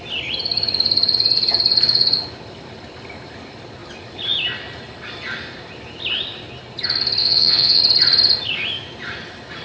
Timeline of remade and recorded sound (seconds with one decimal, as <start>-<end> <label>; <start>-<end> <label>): 0.0-7.2 recorded; 7.2-7.8 remade; 7.8-9.6 recorded

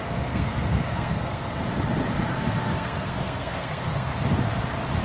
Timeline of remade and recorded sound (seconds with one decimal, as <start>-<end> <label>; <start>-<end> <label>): 0.0-1.6 remade; 1.6-2.3 recorded; 2.3-4.1 remade; 4.1-5.0 recorded

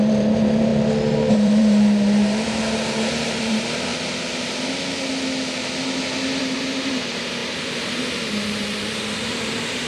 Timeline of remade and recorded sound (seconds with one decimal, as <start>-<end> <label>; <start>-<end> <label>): 0.0-0.7 remade; 0.7-1.3 recorded; 1.3-3.9 remade; 3.9-6.4 recorded; 6.4-9.9 remade

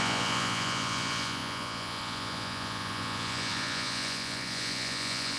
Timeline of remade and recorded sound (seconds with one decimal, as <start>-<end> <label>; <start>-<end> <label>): 0.0-5.4 remade

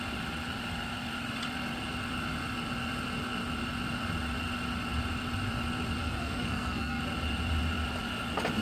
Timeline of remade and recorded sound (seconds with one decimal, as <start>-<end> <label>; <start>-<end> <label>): 0.0-6.0 recorded; 6.0-7.0 remade; 7.0-8.6 recorded

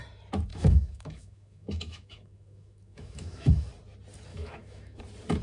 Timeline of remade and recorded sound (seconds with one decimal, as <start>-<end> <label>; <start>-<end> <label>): 0.0-0.5 recorded; 0.5-3.7 remade; 3.7-4.3 recorded; 4.3-5.0 remade; 5.0-5.4 recorded

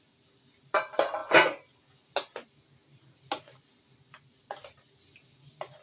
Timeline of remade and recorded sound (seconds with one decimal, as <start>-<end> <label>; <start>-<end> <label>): 0.0-5.8 recorded